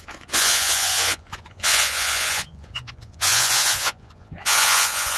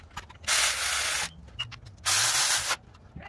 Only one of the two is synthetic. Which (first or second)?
first